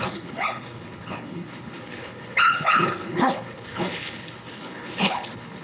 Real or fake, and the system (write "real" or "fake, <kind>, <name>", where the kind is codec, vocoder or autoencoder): fake, codec, HILCodec